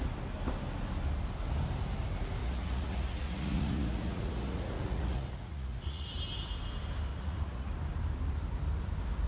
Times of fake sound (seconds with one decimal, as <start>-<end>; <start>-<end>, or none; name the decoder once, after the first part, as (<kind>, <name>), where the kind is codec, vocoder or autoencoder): 2.4-6.1 (vocoder, Vocos); 7.1-7.7